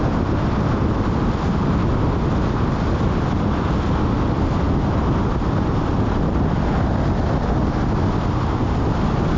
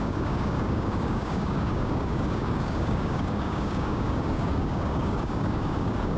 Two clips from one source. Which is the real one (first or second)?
first